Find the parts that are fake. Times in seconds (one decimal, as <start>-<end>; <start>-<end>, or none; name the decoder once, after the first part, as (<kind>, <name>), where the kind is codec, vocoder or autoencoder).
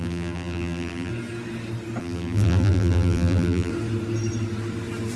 0.0-1.1 (vocoder, BigVGAN v2); 2.0-3.7